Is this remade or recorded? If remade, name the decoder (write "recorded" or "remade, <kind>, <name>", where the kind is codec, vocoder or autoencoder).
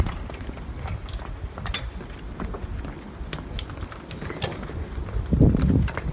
recorded